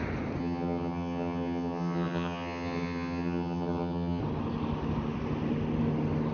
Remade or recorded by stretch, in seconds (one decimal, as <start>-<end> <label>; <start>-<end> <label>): 0.0-0.4 recorded; 0.4-4.2 remade; 4.2-6.3 recorded